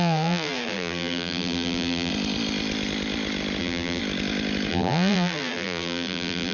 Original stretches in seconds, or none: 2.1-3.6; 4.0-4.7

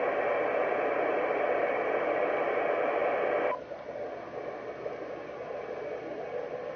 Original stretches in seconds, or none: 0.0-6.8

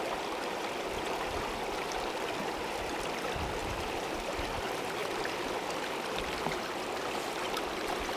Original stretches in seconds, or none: 0.0-3.6; 4.2-8.2

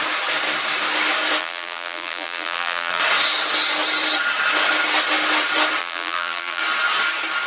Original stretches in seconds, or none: 0.0-1.4; 3.0-5.8; 6.6-7.5